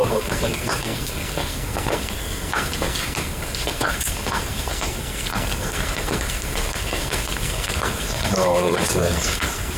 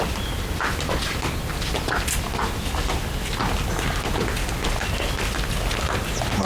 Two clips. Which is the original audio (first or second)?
second